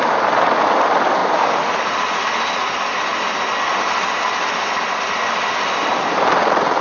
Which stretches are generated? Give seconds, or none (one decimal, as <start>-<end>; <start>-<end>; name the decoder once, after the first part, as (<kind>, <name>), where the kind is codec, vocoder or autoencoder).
none